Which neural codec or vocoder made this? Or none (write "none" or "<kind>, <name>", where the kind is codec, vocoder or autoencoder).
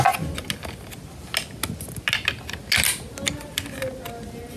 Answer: none